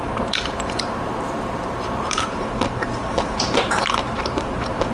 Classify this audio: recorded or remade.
remade